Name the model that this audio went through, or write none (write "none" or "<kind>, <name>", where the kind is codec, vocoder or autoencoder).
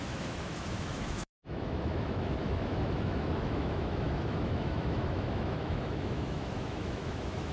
autoencoder, DAC-VAE